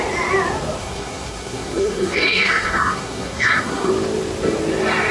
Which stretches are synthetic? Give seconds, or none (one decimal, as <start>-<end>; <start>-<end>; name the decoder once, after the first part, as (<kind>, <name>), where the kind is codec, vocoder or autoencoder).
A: 0.8-3.9 (codec, SNAC)